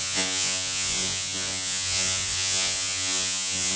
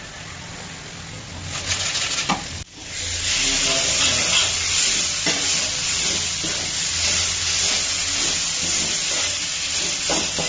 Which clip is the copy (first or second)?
first